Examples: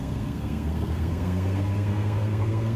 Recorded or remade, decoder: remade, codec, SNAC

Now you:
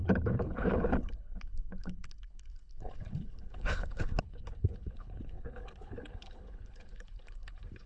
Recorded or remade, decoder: remade, codec, HILCodec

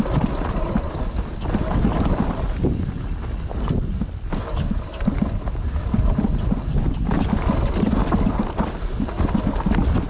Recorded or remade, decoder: recorded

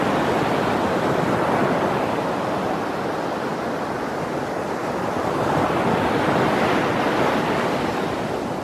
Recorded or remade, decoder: recorded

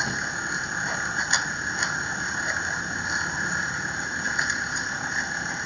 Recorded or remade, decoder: recorded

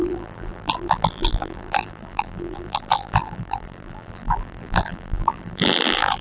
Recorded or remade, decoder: remade, vocoder, BigVGAN v2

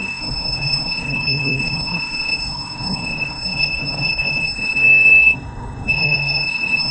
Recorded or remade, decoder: remade, codec, SNAC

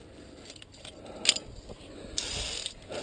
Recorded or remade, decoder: recorded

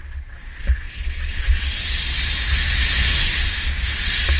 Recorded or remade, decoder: recorded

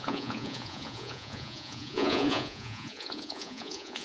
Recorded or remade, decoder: remade, vocoder, Vocos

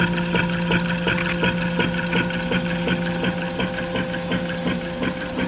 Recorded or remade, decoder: recorded